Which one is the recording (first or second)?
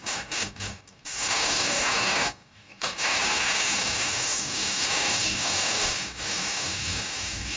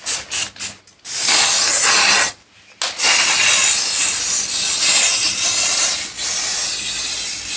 second